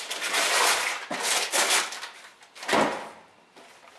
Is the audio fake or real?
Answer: real